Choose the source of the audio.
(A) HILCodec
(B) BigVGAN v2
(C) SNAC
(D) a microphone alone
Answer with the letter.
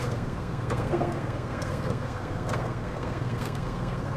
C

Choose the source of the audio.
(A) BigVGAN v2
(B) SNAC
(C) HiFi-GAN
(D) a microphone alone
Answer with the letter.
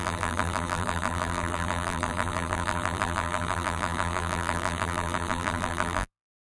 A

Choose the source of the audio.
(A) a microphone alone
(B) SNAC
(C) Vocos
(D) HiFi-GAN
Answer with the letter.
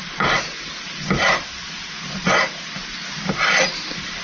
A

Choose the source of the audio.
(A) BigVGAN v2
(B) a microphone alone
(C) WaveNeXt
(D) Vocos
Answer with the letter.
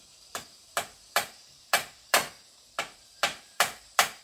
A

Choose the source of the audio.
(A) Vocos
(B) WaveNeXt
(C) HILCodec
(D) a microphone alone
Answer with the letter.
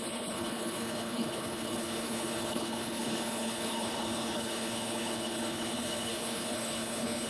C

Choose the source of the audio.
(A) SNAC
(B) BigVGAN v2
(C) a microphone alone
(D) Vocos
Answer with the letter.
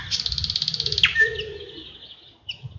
C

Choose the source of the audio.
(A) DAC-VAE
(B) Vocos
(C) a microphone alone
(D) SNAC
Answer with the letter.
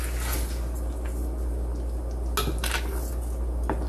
C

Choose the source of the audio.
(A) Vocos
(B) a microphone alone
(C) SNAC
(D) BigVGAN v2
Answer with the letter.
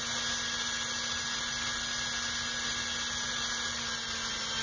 B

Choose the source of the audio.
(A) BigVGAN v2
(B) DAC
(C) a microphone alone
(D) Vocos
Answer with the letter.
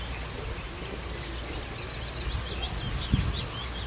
C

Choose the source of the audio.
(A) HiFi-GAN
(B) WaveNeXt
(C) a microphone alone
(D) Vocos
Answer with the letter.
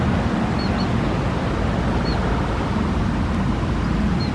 C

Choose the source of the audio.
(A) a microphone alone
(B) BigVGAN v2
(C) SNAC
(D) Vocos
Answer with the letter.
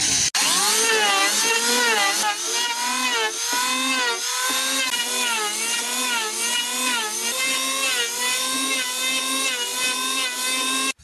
A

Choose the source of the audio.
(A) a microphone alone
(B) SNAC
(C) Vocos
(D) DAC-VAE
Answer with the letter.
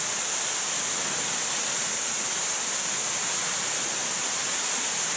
A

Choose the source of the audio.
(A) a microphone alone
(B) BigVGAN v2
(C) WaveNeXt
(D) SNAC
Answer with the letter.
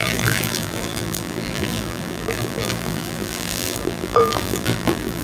B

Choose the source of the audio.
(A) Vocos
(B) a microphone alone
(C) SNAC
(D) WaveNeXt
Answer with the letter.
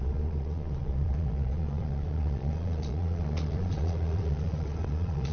A